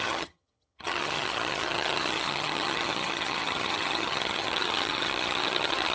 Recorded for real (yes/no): no